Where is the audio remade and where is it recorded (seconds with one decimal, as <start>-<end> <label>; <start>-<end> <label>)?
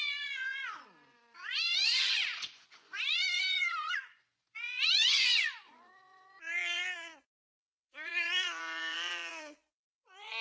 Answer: 0.0-10.4 remade